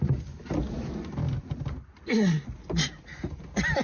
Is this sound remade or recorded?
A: recorded